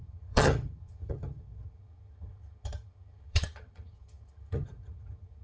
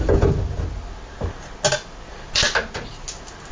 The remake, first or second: first